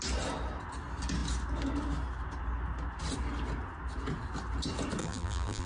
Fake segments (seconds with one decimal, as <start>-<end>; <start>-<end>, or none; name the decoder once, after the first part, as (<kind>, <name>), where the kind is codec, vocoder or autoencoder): 5.0-5.7 (vocoder, BigVGAN v2)